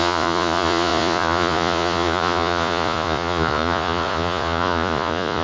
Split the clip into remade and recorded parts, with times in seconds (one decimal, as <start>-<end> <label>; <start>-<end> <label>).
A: 0.0-5.4 remade